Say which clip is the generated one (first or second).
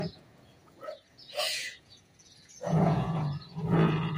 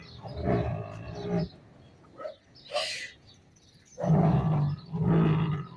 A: first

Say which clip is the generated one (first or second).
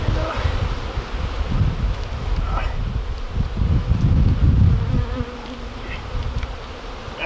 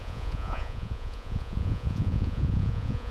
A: second